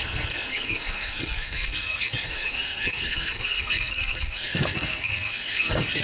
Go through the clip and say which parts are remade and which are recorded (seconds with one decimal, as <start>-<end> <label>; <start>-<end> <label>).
0.0-6.0 remade